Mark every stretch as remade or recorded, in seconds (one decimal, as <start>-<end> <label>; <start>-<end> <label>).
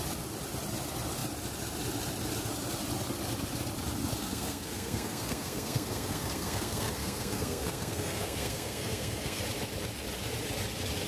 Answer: 0.0-4.2 recorded; 4.2-9.4 remade; 9.4-11.1 recorded